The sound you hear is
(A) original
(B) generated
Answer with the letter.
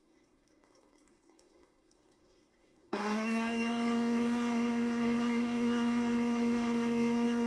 B